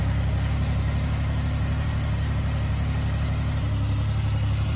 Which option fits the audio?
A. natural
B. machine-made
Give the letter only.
A